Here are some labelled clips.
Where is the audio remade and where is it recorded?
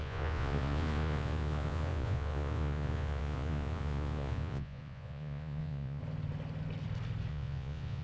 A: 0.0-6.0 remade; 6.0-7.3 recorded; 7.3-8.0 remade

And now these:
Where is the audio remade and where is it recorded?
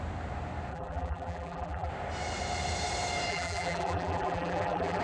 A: 0.0-0.7 recorded; 0.7-1.9 remade; 1.9-3.3 recorded; 3.3-5.0 remade